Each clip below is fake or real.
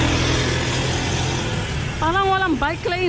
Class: real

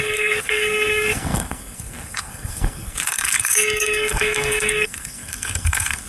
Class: fake